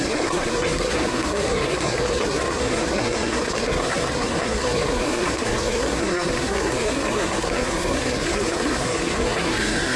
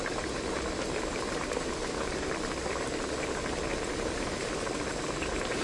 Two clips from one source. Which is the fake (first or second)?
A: first